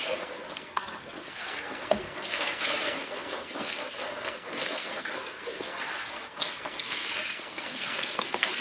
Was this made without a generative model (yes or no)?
no